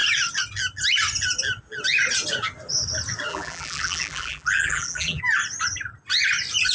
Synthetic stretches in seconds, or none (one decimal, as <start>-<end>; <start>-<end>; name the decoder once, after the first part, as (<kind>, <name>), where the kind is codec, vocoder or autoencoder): 3.3-5.2 (vocoder, BigVGAN v2)

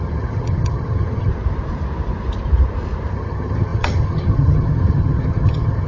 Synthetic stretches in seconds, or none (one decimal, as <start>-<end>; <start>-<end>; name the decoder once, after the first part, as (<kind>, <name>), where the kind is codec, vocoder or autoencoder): 0.0-1.3 (vocoder, HiFi-GAN); 3.1-5.9

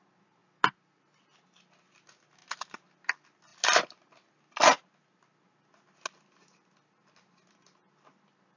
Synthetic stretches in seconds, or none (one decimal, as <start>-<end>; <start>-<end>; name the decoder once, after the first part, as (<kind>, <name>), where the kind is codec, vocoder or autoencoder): none

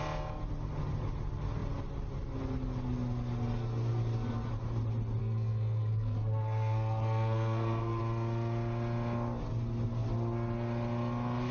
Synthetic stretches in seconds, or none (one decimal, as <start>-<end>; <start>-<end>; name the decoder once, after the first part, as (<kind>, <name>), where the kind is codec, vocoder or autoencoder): 5.2-8.0 (codec, SNAC)

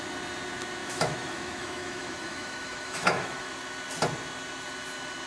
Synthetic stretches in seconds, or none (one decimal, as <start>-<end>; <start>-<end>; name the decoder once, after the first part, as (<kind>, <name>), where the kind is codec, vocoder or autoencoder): 0.8-3.5 (autoencoder, DAC-VAE)

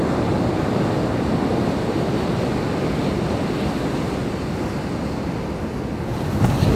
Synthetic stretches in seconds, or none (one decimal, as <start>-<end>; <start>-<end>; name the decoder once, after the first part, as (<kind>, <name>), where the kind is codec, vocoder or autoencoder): none